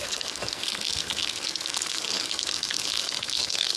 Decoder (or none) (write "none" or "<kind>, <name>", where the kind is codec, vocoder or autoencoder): codec, SNAC